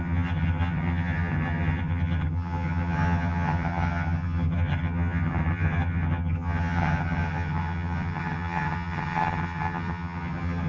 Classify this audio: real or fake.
fake